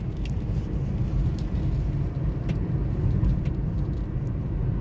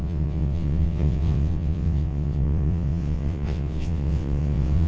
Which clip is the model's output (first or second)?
second